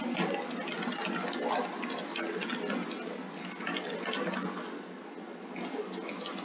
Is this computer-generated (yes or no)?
no